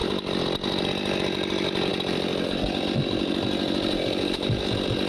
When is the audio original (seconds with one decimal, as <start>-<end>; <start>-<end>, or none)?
none